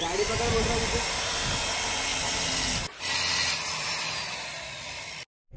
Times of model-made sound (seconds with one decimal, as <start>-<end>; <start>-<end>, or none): none